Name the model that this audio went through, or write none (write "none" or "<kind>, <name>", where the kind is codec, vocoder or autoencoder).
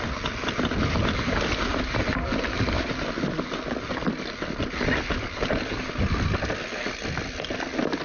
none